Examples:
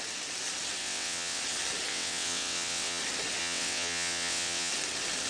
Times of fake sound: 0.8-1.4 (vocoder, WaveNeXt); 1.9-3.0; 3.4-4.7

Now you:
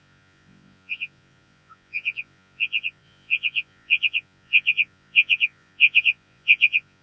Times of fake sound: 0.0-7.0 (vocoder, Vocos)

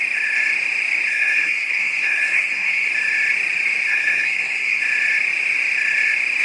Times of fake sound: 1.1-2.9 (codec, SNAC); 3.9-4.8

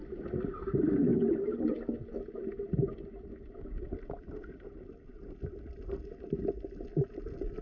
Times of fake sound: none

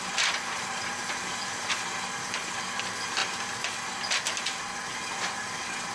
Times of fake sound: none